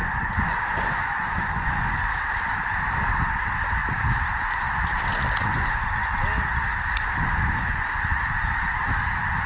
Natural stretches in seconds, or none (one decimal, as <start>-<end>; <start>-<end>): 2.0-5.4; 6.1-7.0; 8.0-9.5